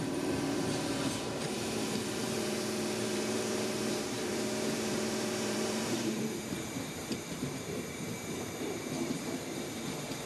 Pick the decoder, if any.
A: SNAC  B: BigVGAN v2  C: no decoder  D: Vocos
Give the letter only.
B